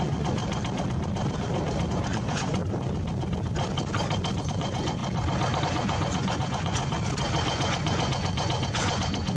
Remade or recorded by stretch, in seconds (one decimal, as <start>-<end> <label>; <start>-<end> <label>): 0.0-0.4 remade; 0.4-1.9 recorded; 1.9-2.6 remade; 2.6-4.4 recorded; 4.4-5.0 remade; 5.0-5.6 recorded; 5.6-6.9 remade; 6.9-7.5 recorded; 7.5-9.4 remade

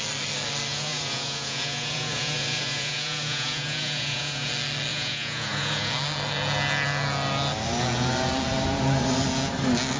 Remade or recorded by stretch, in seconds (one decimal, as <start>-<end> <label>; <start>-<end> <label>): 0.0-0.7 recorded; 0.7-4.5 remade; 4.5-4.9 recorded; 4.9-5.9 remade; 5.9-10.0 recorded

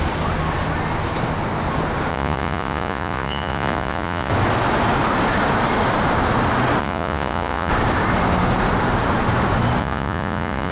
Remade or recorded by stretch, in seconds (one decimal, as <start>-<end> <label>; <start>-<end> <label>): 0.0-2.1 recorded; 2.1-4.3 remade; 4.3-6.8 recorded; 6.8-7.7 remade; 7.7-9.8 recorded; 9.8-10.7 remade

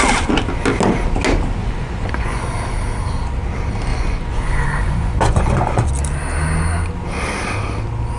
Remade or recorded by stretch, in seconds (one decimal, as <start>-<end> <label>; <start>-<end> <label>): 0.0-1.6 recorded; 1.6-2.4 remade; 2.4-3.9 recorded; 3.9-5.9 remade; 5.9-8.2 recorded

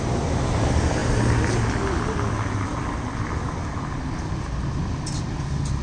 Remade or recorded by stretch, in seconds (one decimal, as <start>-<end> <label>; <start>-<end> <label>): 0.0-5.8 recorded